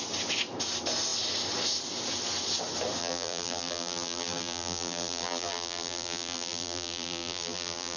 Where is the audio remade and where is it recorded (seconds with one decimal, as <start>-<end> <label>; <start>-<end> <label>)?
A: 0.0-3.0 recorded; 3.0-8.0 remade

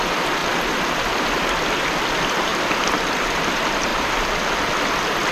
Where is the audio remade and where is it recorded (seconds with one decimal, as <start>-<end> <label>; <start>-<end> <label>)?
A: 0.0-5.3 recorded

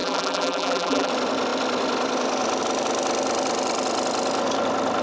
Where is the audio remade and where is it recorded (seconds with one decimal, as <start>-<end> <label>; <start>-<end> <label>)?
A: 0.0-1.1 remade; 1.1-5.0 recorded

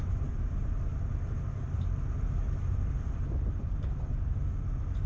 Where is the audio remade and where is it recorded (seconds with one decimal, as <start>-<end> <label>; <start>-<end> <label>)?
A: 0.0-5.1 recorded

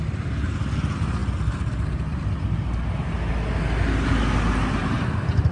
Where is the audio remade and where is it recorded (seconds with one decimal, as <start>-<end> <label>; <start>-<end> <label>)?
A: 0.0-5.5 recorded

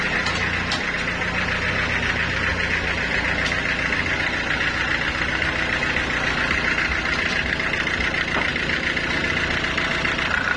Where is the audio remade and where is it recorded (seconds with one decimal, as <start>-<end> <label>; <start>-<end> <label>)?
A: 0.0-10.6 recorded

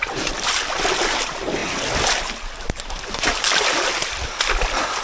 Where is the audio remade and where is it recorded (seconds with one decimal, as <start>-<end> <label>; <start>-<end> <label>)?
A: 0.0-1.6 remade; 1.6-2.7 recorded; 2.7-5.0 remade

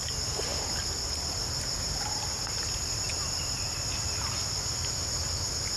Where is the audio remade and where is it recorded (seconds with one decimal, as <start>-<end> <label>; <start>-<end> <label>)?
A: 0.0-5.8 recorded